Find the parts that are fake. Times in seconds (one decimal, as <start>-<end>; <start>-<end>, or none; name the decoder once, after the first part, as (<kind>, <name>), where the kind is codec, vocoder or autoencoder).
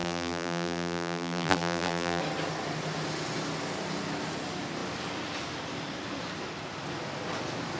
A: 0.0-2.2 (vocoder, BigVGAN v2)